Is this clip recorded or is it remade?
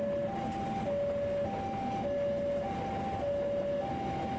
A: recorded